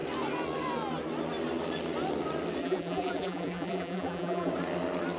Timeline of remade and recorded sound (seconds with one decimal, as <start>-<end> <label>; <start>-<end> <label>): 0.0-2.6 recorded; 2.6-4.5 remade; 4.5-5.2 recorded